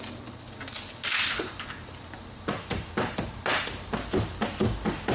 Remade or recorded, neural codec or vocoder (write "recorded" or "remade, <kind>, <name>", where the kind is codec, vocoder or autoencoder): recorded